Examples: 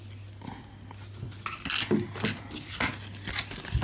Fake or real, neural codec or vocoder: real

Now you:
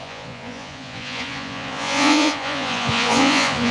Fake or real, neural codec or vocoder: fake, vocoder, Vocos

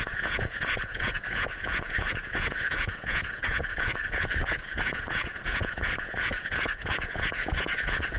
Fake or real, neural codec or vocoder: fake, vocoder, Vocos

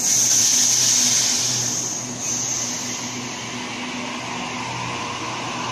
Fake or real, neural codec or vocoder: real